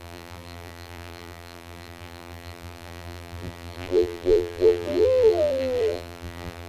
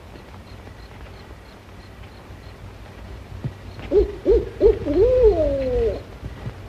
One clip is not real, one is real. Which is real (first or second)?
second